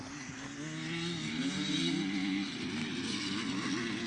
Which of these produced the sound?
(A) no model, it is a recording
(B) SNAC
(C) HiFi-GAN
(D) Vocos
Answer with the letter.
A